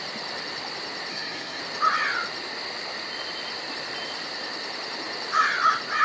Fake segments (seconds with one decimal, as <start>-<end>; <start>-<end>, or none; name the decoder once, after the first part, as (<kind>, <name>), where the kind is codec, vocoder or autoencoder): 1.1-1.6 (codec, SNAC)